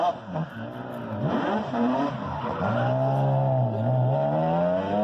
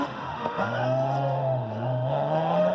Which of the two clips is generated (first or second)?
second